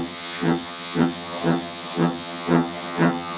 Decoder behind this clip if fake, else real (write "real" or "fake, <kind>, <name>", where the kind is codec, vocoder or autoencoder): fake, vocoder, HiFi-GAN